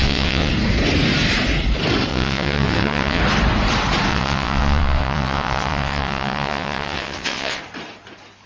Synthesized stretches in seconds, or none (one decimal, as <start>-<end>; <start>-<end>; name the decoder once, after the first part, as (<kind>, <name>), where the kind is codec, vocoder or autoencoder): 0.0-0.5 (vocoder, WaveNeXt); 2.1-3.2; 4.1-7.6